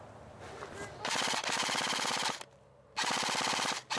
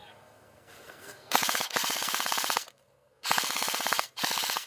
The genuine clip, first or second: first